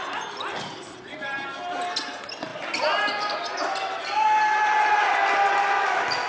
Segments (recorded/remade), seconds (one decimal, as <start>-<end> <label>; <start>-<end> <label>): 0.0-6.3 recorded